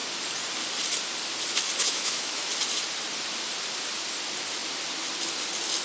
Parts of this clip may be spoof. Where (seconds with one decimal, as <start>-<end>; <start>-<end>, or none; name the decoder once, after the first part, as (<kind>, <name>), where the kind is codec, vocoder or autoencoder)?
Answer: 1.8-2.5 (autoencoder, DAC-VAE)